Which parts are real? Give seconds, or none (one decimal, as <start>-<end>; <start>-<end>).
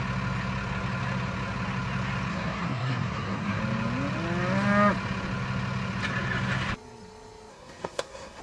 0.0-2.3; 3.6-7.5